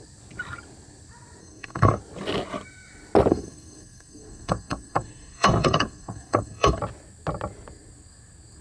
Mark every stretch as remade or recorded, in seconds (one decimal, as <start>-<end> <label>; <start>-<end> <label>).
0.0-1.4 recorded; 1.4-2.0 remade; 2.0-3.3 recorded; 3.3-6.8 remade; 6.8-8.6 recorded